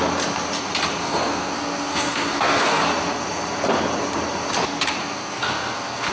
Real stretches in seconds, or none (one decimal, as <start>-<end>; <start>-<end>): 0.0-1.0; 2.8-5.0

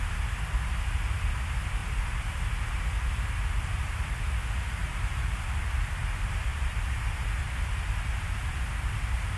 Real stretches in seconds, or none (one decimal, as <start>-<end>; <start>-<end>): 0.0-4.8; 5.4-6.5; 7.4-9.4

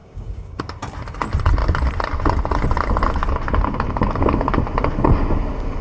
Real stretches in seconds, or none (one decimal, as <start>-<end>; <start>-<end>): 0.6-5.8

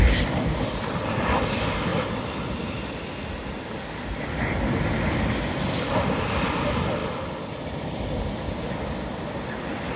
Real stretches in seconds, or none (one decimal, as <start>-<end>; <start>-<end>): 0.0-10.0

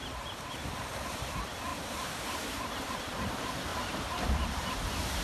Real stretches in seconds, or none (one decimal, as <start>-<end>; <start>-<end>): 0.0-1.7; 3.3-3.7; 4.3-5.2

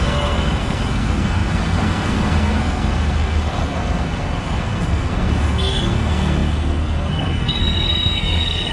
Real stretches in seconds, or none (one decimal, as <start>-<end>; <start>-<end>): none